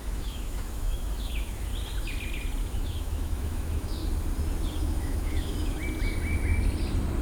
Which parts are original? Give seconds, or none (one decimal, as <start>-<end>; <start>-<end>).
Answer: 1.7-2.6; 4.0-4.8; 5.8-7.2